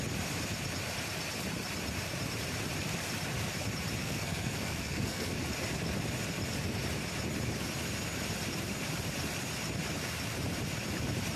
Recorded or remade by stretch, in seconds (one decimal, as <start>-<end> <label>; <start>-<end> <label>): 0.0-4.0 recorded; 4.0-5.3 remade; 5.3-11.4 recorded

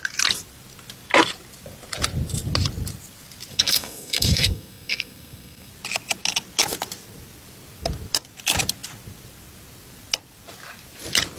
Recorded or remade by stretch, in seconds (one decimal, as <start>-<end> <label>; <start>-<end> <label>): 0.0-3.5 recorded; 3.5-5.7 remade; 5.7-11.4 recorded

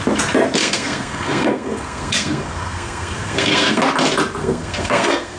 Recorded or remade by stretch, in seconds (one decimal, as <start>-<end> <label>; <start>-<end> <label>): 0.0-0.6 recorded; 0.6-3.8 remade; 3.8-4.4 recorded; 4.4-5.4 remade

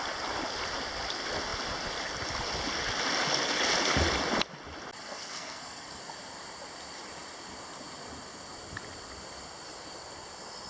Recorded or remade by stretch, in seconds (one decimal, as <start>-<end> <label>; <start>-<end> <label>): 0.0-5.0 recorded; 5.0-6.0 remade; 6.0-10.7 recorded

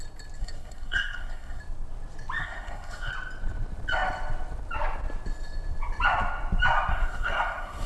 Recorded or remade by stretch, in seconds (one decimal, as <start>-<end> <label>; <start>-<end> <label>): 0.0-0.4 recorded; 0.4-1.6 remade; 1.6-2.4 recorded; 2.4-3.1 remade; 3.1-6.9 recorded; 6.9-7.9 remade

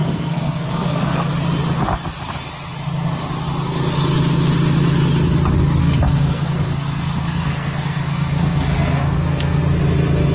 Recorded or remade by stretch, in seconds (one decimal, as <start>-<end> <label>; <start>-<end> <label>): 0.0-1.3 remade; 1.3-5.8 recorded; 5.8-9.6 remade; 9.6-10.3 recorded

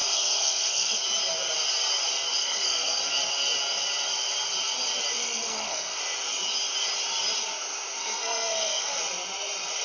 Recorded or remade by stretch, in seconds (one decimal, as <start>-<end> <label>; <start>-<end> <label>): 0.0-1.0 remade; 1.0-2.4 recorded; 2.4-3.0 remade; 3.0-5.2 recorded; 5.2-6.0 remade; 6.0-8.0 recorded; 8.0-9.0 remade; 9.0-9.8 recorded

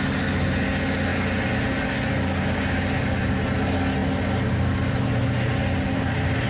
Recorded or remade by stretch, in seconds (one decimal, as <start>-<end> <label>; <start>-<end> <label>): 0.0-6.5 recorded